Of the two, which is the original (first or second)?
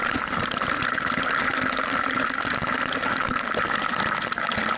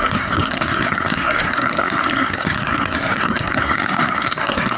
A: first